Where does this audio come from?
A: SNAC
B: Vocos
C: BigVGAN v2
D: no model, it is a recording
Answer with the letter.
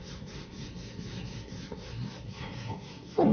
A